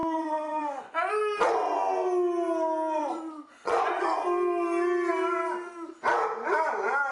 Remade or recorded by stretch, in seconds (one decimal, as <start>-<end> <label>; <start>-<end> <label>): 0.0-1.1 remade; 1.1-3.0 recorded; 3.0-4.0 remade; 4.0-7.1 recorded